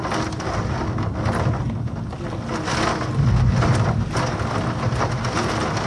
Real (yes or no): yes